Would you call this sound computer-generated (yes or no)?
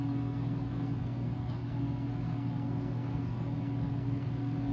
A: yes